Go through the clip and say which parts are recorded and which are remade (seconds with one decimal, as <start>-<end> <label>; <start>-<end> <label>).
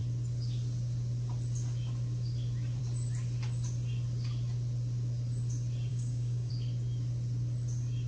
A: 0.0-5.9 recorded; 5.9-6.5 remade; 6.5-8.1 recorded